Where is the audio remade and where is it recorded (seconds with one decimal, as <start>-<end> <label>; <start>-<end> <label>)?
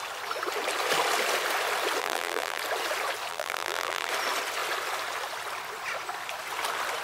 0.0-2.0 recorded; 2.0-2.6 remade; 2.6-3.3 recorded; 3.3-4.1 remade; 4.1-7.0 recorded